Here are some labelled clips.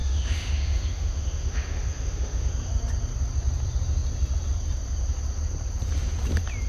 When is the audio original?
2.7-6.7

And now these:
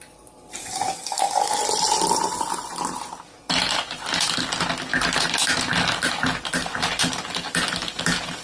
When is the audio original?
0.0-0.6; 1.6-8.4

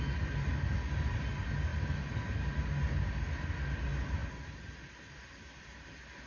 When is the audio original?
0.0-6.3